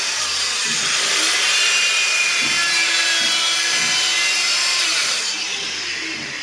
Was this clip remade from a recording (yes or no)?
yes